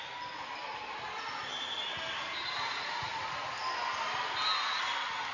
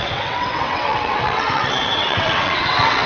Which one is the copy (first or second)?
second